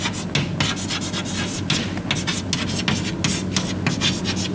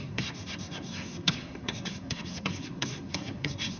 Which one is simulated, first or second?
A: second